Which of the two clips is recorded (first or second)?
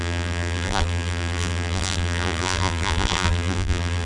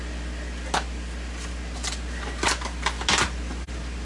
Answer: second